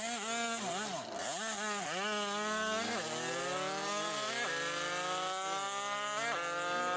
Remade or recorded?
recorded